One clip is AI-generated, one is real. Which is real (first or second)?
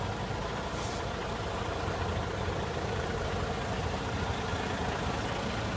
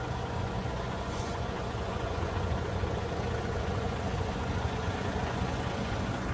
first